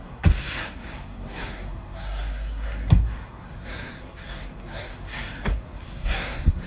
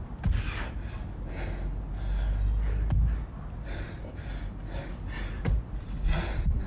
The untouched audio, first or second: second